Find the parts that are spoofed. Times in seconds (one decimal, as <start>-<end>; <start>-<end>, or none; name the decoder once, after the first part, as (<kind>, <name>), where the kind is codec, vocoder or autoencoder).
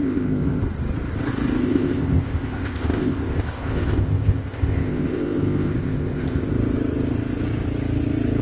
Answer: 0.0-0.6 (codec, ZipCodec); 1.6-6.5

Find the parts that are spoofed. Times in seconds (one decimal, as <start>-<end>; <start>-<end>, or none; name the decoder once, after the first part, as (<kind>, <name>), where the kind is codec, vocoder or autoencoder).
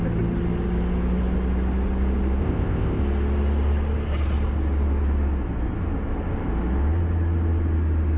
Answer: 2.4-3.0 (codec, ZipCodec)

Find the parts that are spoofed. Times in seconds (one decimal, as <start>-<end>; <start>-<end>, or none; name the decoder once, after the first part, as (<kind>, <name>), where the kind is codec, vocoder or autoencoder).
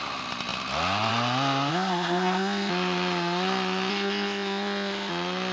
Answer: 1.7-2.7 (codec, ZipCodec); 3.9-5.1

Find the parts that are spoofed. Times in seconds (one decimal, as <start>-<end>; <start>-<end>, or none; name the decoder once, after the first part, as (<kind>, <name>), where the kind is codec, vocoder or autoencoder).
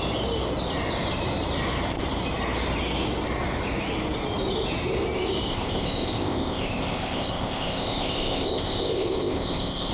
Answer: 5.5-9.9 (codec, ZipCodec)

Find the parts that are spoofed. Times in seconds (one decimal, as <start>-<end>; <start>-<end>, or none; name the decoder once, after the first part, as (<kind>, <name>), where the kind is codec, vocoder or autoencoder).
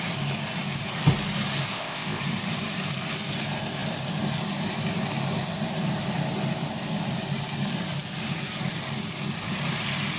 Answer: 1.7-2.2 (codec, ZipCodec)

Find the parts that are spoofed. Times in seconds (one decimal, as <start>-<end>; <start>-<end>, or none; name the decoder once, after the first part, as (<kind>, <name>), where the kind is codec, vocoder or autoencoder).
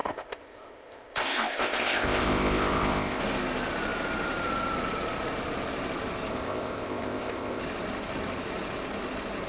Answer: 0.0-3.2 (codec, ZipCodec); 6.3-7.6